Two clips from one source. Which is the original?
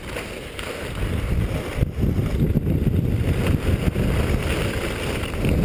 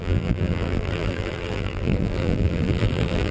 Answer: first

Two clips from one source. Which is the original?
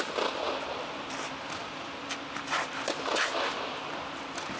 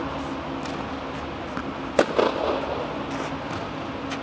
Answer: second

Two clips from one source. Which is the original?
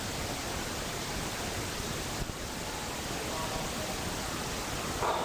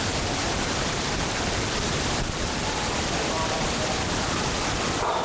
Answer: first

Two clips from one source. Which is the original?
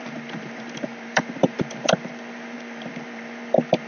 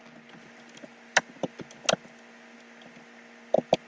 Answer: second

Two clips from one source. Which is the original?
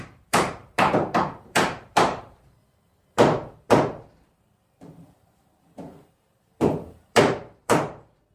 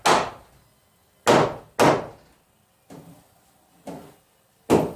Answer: second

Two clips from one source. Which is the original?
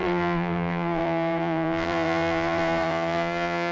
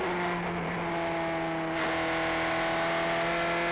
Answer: second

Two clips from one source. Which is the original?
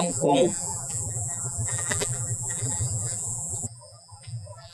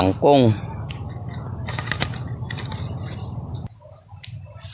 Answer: second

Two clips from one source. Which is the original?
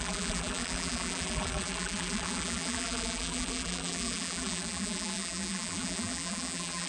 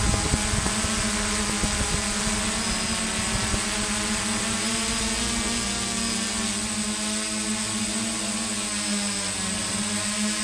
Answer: second